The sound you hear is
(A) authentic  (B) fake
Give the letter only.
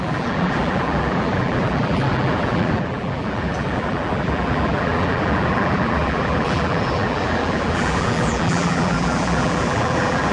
B